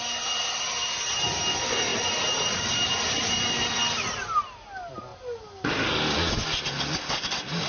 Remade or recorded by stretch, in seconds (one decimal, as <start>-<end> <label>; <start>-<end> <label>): 0.0-1.9 recorded; 1.9-3.5 remade; 3.5-7.7 recorded

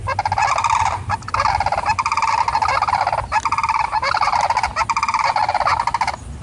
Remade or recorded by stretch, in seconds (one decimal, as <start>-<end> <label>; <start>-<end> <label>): 0.0-6.4 recorded

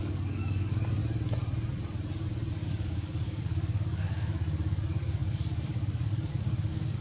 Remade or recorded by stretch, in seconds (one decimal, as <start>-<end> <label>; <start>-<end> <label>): 0.0-1.0 remade; 1.0-2.5 recorded; 2.5-7.0 remade

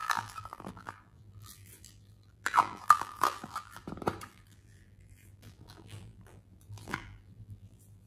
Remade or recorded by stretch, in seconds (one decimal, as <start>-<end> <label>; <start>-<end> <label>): 0.0-3.8 remade; 3.8-4.3 recorded; 4.3-8.1 remade

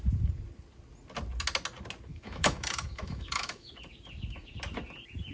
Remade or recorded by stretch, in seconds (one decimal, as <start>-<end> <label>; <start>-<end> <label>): 0.0-2.1 recorded; 2.1-3.7 remade; 3.7-5.3 recorded

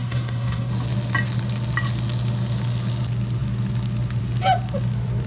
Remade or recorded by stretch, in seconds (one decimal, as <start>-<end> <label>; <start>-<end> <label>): 0.0-0.7 remade; 0.7-5.3 recorded

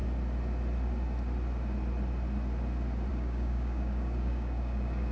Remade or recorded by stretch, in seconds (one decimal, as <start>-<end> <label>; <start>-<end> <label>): 0.0-3.1 recorded; 3.1-5.1 remade

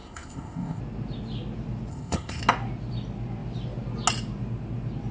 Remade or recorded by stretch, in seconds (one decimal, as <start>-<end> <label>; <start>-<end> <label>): 0.0-0.8 remade; 0.8-1.9 recorded; 1.9-2.4 remade; 2.4-5.1 recorded